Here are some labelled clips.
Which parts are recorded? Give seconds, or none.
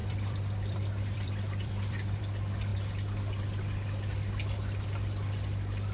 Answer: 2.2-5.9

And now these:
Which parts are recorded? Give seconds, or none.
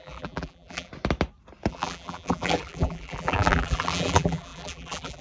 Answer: 0.9-1.7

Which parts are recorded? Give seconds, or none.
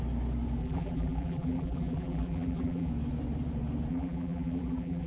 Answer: 0.0-0.6; 2.9-3.9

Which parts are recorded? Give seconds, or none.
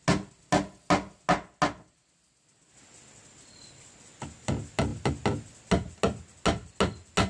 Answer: 0.0-7.3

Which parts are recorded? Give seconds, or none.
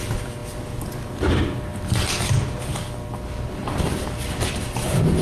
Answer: 0.0-3.6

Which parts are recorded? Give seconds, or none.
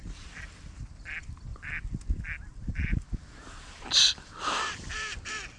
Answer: 1.5-2.7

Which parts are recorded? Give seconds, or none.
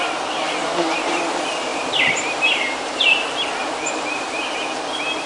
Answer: 0.0-0.6; 1.2-1.7; 3.2-3.6; 4.4-5.3